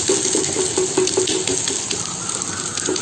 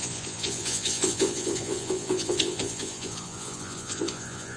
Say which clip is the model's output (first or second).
second